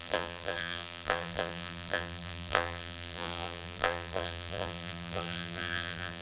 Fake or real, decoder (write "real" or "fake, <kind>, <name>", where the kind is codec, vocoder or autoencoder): fake, vocoder, BigVGAN v2